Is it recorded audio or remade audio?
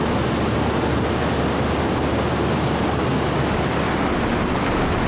recorded